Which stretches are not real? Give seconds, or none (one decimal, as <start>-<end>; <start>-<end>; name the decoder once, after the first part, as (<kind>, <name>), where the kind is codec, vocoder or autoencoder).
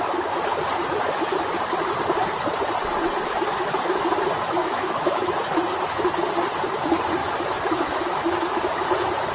4.6-5.2 (autoencoder, DAC-VAE); 7.2-8.2